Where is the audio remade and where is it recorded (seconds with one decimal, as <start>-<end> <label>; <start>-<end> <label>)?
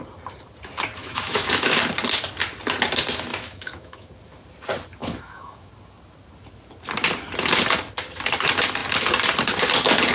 0.0-1.0 recorded; 1.0-1.8 remade; 1.8-3.3 recorded; 3.3-4.1 remade; 4.1-5.0 recorded; 5.0-5.7 remade; 5.7-10.1 recorded